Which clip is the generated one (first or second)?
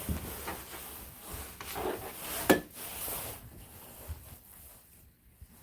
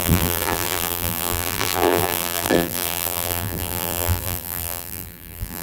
second